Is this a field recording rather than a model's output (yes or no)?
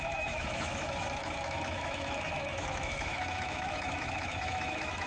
no